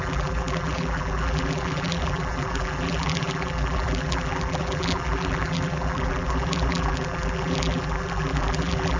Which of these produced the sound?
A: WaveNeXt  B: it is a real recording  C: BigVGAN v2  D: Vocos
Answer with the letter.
C